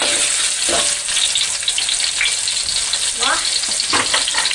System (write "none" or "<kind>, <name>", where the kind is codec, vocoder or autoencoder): none